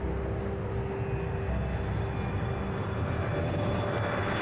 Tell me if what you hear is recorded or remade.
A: recorded